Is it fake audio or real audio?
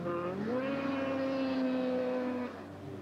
real